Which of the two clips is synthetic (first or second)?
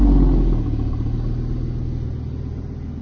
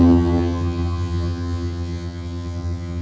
second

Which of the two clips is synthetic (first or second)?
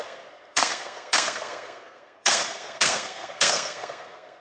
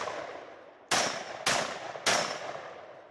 first